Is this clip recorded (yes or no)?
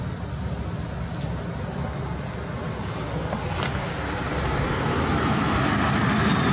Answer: yes